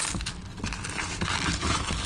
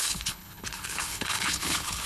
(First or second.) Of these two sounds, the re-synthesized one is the second